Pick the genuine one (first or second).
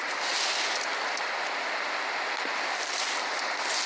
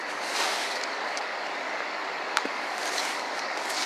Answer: first